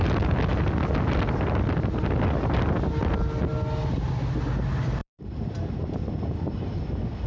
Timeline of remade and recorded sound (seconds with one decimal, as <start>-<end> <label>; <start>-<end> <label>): 0.0-5.0 recorded; 5.0-5.6 remade; 5.6-7.3 recorded